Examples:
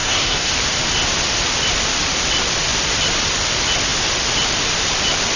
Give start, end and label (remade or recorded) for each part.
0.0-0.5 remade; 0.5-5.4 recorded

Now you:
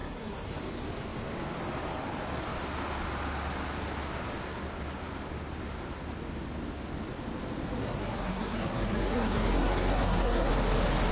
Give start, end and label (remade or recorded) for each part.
0.0-0.6 remade; 0.6-7.8 recorded; 7.8-10.5 remade; 10.5-11.1 recorded

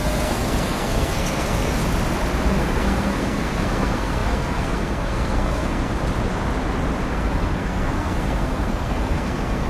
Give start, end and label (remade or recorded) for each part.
0.0-1.8 remade; 1.8-2.5 recorded; 2.5-5.9 remade; 5.9-7.1 recorded; 7.1-9.7 remade

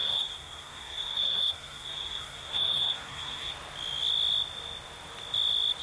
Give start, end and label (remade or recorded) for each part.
0.0-3.5 remade; 3.5-5.8 recorded

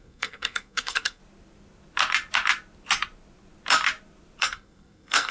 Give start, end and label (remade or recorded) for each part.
0.0-1.2 remade; 1.2-4.4 recorded; 4.4-5.3 remade

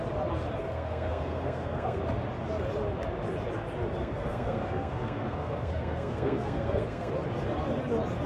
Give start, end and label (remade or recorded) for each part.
0.0-0.6 recorded; 0.6-2.0 remade; 2.0-4.0 recorded; 4.0-7.1 remade; 7.1-8.3 recorded